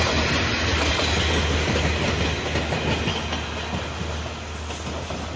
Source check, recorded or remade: recorded